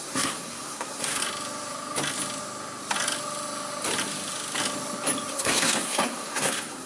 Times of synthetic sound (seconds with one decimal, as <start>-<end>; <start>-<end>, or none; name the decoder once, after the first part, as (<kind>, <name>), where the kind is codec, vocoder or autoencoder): 0.0-1.2 (codec, SNAC); 5.3-6.9